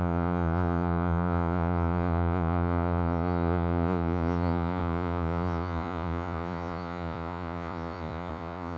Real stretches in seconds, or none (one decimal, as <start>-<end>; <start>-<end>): none